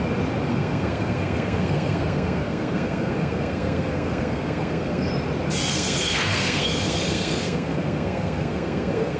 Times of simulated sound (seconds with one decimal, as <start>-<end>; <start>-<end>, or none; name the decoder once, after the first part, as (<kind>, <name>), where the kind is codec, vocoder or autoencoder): 0.5-5.1 (codec, SNAC); 5.7-9.2